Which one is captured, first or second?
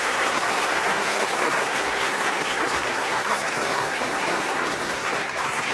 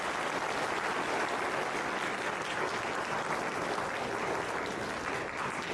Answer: second